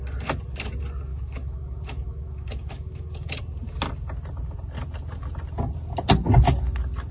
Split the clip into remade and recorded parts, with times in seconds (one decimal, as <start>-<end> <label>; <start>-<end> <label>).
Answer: 0.0-1.1 recorded; 1.1-3.4 remade; 3.4-7.1 recorded